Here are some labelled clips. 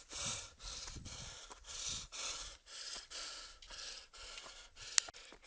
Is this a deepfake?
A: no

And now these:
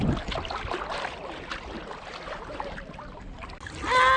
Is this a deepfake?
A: no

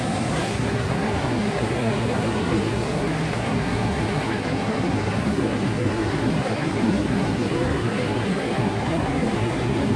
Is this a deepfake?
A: yes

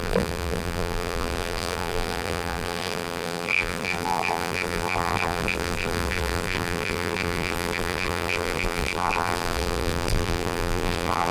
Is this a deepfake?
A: yes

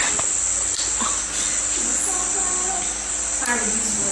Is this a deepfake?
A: no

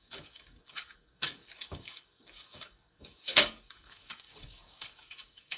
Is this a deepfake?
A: yes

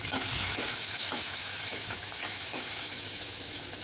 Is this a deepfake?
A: yes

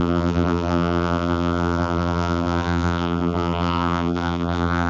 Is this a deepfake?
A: yes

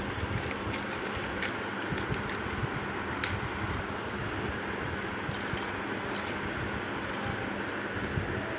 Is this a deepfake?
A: no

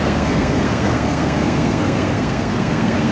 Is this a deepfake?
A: yes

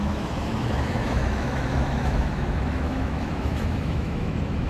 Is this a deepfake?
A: yes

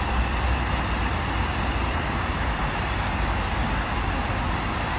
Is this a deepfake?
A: no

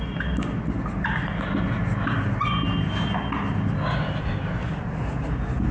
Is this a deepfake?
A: no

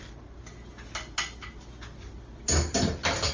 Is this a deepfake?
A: no